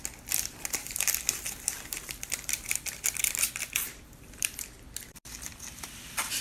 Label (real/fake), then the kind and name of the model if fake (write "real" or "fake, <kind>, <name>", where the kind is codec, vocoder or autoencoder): fake, vocoder, BigVGAN v2